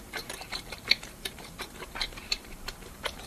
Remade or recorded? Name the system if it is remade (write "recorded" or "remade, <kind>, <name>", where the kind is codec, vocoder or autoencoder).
remade, vocoder, BigVGAN v2